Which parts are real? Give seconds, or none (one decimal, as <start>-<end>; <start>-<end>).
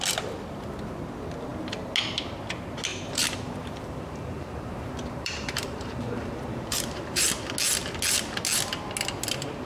0.0-2.9; 7.3-9.7